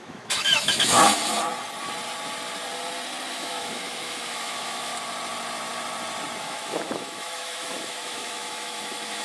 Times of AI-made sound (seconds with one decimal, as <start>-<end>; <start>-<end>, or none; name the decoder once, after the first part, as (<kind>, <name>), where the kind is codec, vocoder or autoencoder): 0.0-1.0 (autoencoder, DAC-VAE); 3.3-4.9; 6.4-9.2